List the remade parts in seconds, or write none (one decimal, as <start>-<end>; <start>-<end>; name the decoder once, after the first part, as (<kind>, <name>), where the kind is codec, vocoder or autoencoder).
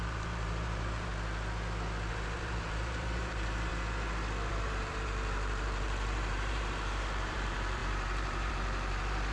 0.0-1.1 (vocoder, BigVGAN v2); 2.1-3.7; 4.5-9.3